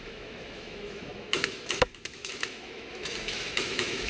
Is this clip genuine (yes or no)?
no